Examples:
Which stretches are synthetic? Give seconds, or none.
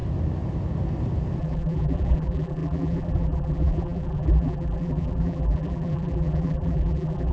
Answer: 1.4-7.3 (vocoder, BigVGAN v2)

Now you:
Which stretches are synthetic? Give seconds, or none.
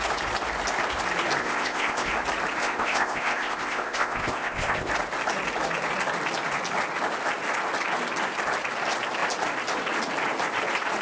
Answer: 1.4-2.1 (codec, ZipCodec); 2.6-4.9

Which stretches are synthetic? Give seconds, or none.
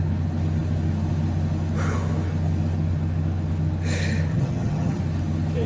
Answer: 4.3-5.0 (vocoder, HiFi-GAN)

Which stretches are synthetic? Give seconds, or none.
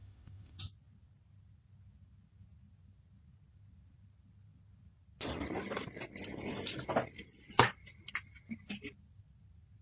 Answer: 0.0-0.6 (autoencoder, DAC-VAE)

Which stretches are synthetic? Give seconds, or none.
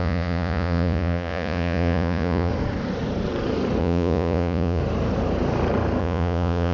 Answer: 0.0-2.5 (vocoder, Vocos); 3.8-4.8; 6.0-6.7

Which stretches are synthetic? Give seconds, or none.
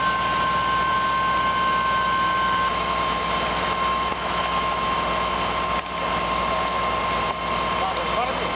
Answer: 4.1-4.8 (autoencoder, DAC-VAE)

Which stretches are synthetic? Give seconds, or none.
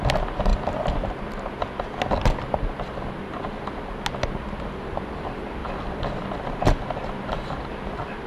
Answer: 5.6-8.3 (vocoder, BigVGAN v2)